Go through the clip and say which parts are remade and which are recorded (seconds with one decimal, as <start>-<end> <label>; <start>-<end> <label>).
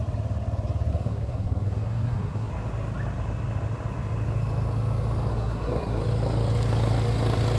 0.0-0.9 recorded; 0.9-2.5 remade; 2.5-5.3 recorded; 5.3-6.0 remade; 6.0-7.6 recorded